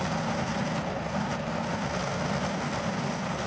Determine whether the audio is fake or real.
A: real